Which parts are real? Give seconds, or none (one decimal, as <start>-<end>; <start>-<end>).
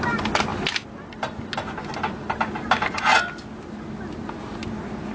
0.0-5.1